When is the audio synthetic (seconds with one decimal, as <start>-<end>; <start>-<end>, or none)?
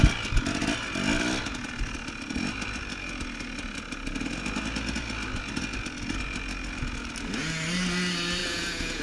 8.4-9.0